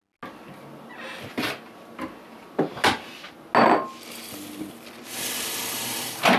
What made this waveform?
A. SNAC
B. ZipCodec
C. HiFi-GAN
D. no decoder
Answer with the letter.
D